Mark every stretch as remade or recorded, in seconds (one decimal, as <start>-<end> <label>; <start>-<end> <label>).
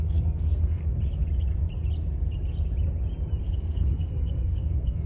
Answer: 0.0-0.8 remade; 0.8-3.4 recorded; 3.4-5.1 remade